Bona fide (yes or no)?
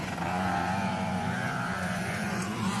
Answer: no